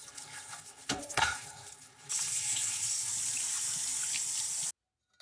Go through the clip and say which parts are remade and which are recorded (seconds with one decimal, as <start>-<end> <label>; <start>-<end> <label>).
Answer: 0.0-3.1 remade; 3.1-5.2 recorded